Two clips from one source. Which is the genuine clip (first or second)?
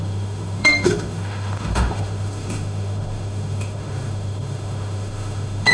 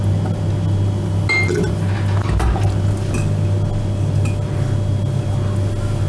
second